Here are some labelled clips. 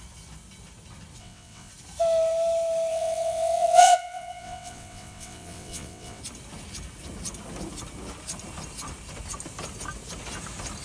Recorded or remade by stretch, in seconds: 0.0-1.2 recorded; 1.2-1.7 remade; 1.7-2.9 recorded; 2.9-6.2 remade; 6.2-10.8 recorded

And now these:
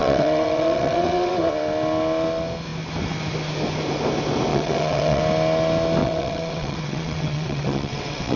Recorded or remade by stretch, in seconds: 0.0-1.3 remade; 1.3-4.5 recorded; 4.5-5.2 remade; 5.2-6.0 recorded; 6.0-8.4 remade

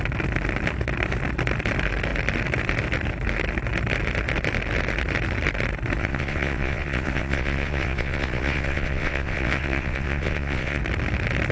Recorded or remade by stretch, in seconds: 0.0-6.0 recorded; 6.0-10.8 remade; 10.8-11.5 recorded

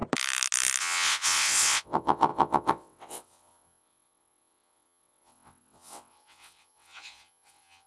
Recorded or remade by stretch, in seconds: 0.0-0.8 recorded; 0.8-7.9 remade